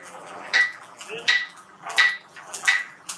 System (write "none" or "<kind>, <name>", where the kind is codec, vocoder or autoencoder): vocoder, BigVGAN v2